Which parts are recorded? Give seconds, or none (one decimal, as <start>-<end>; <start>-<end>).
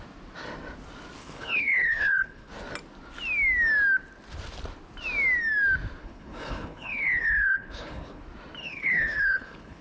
0.0-1.2; 2.5-6.0; 8.2-8.6